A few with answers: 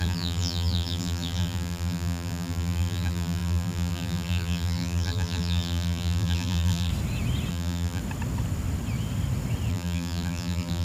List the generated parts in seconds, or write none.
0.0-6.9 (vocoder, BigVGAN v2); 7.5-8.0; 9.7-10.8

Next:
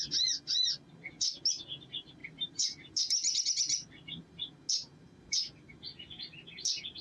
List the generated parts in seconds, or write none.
2.2-2.9 (vocoder, BigVGAN v2)

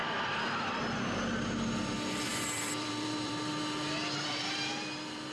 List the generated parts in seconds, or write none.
0.0-0.8 (vocoder, BigVGAN v2); 2.3-3.5; 4.0-4.6

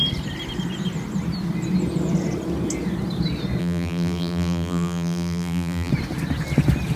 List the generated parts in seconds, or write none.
3.6-5.9 (vocoder, BigVGAN v2)

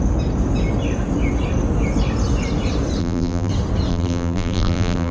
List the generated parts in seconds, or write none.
3.0-3.5 (vocoder, BigVGAN v2); 3.9-5.1